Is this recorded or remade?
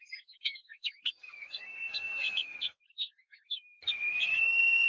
remade